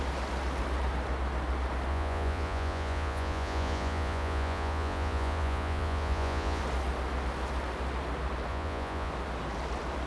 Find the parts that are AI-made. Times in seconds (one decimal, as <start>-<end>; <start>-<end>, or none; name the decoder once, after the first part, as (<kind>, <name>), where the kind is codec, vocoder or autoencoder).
1.9-6.6 (vocoder, Vocos); 8.5-9.1